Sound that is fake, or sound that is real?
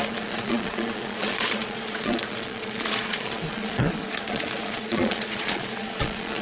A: fake